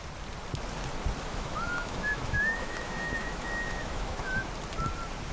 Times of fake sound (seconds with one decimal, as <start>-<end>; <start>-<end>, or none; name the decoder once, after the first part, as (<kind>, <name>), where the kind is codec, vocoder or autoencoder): 1.3-4.5 (autoencoder, DAC-VAE)

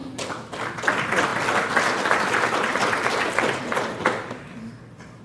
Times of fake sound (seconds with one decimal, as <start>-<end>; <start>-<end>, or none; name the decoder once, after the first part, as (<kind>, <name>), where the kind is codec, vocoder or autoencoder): none

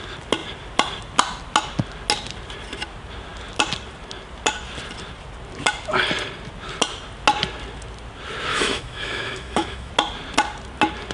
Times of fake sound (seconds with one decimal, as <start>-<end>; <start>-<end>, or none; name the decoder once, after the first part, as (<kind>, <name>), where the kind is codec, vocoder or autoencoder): 8.5-9.9 (autoencoder, DAC-VAE)

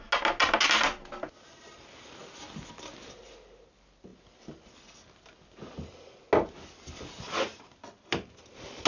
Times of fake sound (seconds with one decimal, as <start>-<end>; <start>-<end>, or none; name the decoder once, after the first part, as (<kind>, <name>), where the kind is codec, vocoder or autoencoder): none

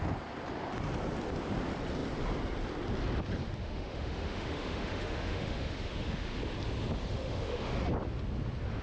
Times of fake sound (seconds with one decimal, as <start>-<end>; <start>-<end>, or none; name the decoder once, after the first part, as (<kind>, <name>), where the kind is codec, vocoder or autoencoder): 3.6-6.4 (autoencoder, DAC-VAE); 7.1-7.8

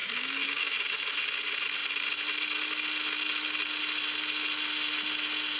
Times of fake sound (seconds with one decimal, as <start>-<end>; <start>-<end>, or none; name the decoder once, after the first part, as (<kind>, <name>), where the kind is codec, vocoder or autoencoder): 0.0-0.8 (autoencoder, DAC-VAE)

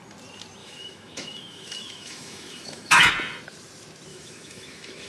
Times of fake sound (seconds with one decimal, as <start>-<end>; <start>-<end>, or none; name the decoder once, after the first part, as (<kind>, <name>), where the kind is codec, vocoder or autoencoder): 0.6-3.1 (autoencoder, DAC-VAE); 4.1-5.1